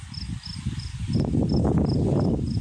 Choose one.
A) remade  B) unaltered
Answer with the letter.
B